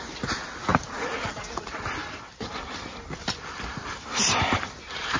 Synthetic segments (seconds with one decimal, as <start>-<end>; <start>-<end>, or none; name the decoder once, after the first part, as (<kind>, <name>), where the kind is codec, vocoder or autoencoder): 0.7-1.4 (vocoder, BigVGAN v2); 2.0-4.8